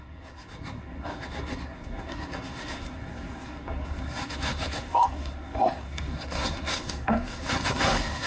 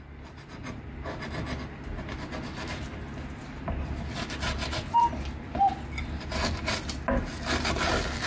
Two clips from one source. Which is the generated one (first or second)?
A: first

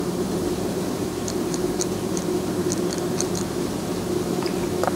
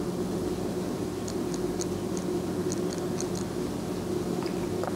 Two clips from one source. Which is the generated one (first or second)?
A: first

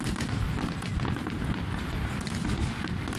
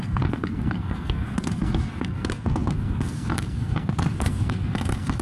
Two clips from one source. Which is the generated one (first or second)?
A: second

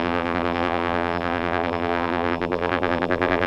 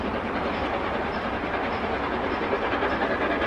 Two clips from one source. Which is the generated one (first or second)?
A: first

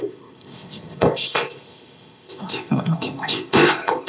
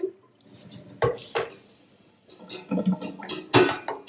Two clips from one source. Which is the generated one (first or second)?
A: first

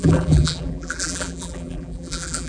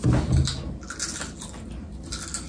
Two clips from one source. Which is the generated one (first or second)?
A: first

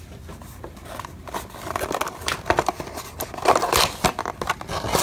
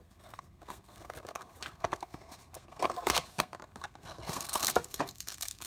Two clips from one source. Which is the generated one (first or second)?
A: second